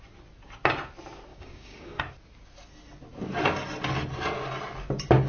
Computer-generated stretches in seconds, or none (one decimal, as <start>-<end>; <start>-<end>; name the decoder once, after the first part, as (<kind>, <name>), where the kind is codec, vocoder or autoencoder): 1.3-2.0 (codec, DAC)